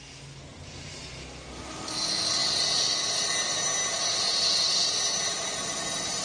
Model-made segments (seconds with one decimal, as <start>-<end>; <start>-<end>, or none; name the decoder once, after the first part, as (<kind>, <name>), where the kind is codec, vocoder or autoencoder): 0.5-1.5 (vocoder, BigVGAN v2); 2.4-2.9; 5.6-6.2